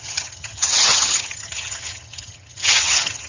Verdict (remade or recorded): remade